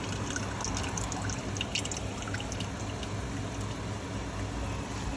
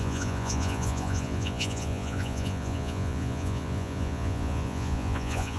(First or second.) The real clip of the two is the first